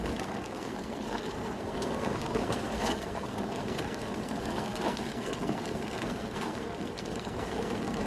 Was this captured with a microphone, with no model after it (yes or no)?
no